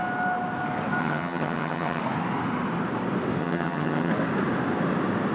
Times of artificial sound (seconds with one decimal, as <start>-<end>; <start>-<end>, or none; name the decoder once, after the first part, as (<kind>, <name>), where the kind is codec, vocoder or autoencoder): 1.0-2.0 (vocoder, HiFi-GAN); 3.4-4.1